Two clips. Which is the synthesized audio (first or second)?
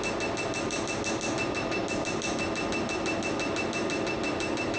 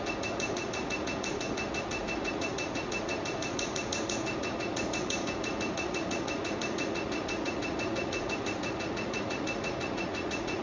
second